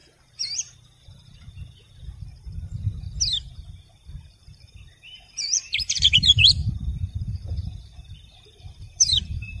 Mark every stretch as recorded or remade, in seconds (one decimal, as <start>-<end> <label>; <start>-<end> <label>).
0.0-1.5 remade; 1.5-4.4 recorded; 4.4-9.6 remade